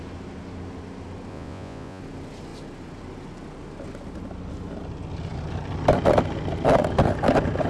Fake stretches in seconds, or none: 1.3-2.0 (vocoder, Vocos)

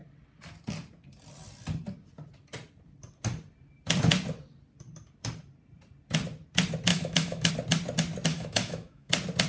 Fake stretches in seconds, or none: 6.9-7.5 (autoencoder, DAC-VAE); 8.3-9.1